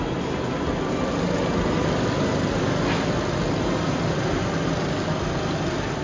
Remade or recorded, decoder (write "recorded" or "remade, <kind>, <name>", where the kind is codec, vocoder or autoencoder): recorded